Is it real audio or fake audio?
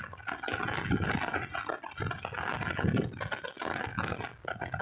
real